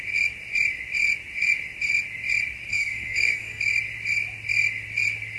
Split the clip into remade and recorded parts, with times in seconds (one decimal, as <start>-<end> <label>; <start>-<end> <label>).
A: 0.0-2.7 recorded; 2.7-3.6 remade; 3.6-5.4 recorded